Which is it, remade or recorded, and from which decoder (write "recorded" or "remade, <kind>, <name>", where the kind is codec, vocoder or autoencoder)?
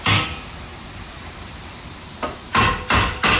recorded